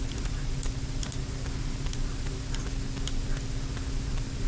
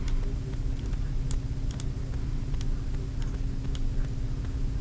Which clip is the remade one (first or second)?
first